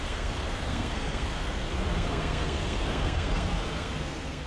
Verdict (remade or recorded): remade